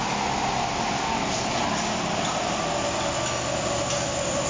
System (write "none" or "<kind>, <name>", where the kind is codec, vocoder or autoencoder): none